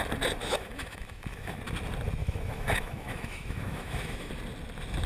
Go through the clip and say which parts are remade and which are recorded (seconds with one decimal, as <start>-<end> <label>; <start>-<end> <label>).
0.0-0.4 recorded; 0.4-1.6 remade; 1.6-2.2 recorded; 2.2-4.3 remade; 4.3-5.1 recorded